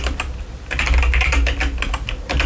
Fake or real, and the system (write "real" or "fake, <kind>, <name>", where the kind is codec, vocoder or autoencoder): real